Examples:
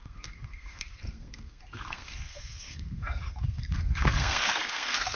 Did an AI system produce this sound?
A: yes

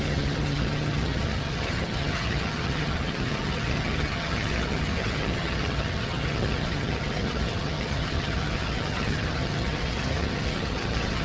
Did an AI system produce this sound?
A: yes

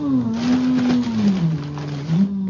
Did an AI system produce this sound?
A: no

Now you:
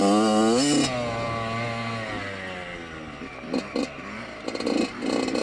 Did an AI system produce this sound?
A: no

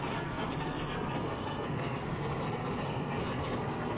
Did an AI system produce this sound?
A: yes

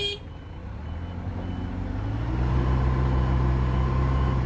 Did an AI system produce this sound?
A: no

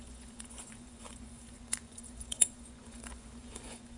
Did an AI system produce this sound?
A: yes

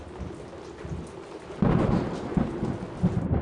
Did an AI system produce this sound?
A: no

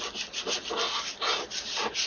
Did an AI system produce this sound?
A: no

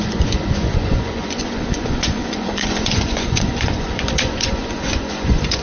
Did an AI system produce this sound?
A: yes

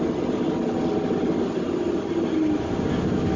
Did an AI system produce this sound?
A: no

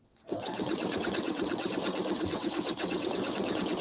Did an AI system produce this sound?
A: yes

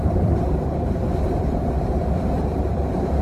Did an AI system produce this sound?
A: yes